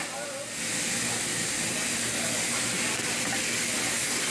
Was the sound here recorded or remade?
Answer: recorded